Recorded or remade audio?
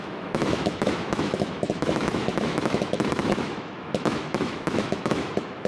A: remade